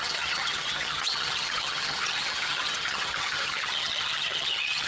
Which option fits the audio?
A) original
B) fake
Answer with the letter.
B